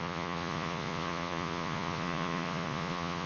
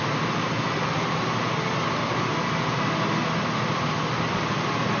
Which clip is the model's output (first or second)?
first